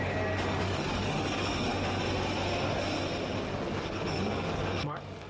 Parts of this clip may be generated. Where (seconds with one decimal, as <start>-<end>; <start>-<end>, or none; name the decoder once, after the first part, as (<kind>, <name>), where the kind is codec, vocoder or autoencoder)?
0.0-1.7 (codec, DAC); 3.7-5.3